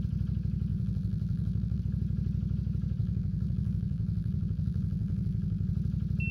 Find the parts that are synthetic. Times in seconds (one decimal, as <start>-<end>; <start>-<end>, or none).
0.7-1.8; 3.0-5.7